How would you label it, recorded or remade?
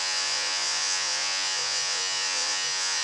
remade